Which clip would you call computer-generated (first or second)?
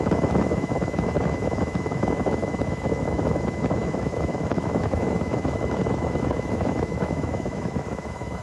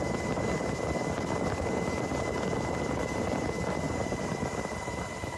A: first